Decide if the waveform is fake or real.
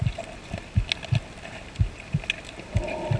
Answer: real